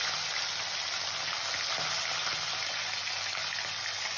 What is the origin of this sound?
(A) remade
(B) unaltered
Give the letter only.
B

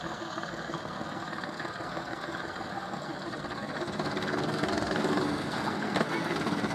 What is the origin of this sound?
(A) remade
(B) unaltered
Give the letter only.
A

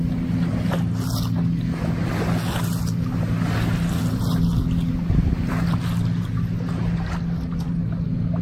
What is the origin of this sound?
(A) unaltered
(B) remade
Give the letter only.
A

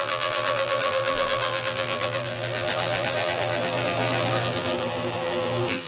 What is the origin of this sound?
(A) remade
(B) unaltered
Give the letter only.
A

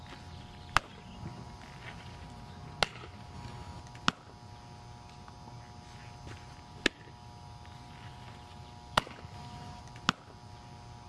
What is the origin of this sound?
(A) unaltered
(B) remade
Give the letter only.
A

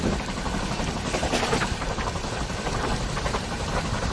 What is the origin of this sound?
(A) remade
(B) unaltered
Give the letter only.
A